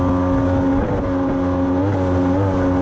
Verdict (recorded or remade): recorded